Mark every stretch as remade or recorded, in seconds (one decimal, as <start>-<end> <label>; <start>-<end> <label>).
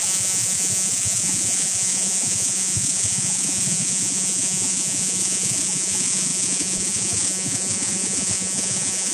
0.0-9.1 remade